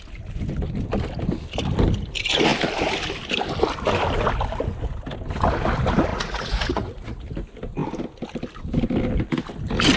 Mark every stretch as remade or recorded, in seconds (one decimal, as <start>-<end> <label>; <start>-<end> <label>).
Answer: 0.0-6.1 recorded; 6.1-7.2 remade; 7.2-10.0 recorded